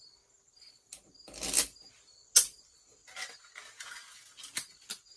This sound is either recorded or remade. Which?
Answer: recorded